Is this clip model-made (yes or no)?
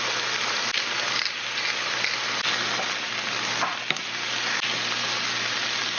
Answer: no